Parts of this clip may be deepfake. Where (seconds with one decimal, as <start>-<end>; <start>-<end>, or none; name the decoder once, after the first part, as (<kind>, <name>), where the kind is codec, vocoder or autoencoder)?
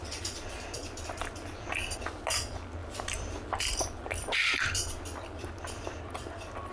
2.8-3.6 (vocoder, BigVGAN v2)